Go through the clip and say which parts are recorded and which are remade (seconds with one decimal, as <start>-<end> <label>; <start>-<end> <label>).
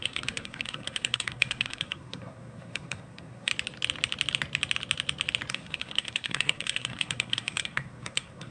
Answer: 0.0-3.5 remade; 3.5-5.5 recorded; 5.5-8.5 remade